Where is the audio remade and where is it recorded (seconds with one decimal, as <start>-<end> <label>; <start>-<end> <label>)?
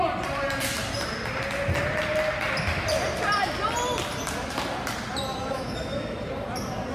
0.0-5.4 recorded; 5.4-6.2 remade; 6.2-6.9 recorded